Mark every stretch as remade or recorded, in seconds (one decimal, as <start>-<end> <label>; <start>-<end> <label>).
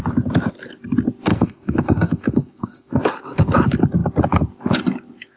0.0-1.3 recorded; 1.3-3.0 remade; 3.0-5.4 recorded